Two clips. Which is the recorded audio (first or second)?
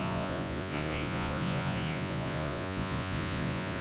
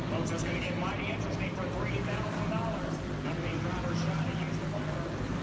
second